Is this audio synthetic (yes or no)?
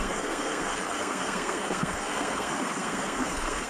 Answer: yes